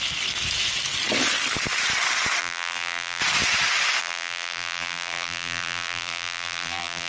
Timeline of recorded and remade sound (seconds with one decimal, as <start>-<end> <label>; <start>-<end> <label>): 0.0-2.4 recorded; 2.4-3.2 remade; 3.2-4.0 recorded; 4.0-7.1 remade